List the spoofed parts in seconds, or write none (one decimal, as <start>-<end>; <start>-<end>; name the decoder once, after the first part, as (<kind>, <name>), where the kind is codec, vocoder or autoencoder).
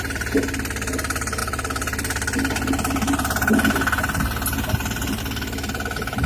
none